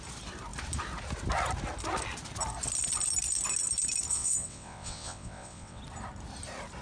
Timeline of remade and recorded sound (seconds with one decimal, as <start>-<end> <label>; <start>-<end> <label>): 0.0-4.1 recorded; 4.1-5.8 remade; 5.8-6.8 recorded